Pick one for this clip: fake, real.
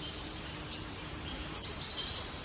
fake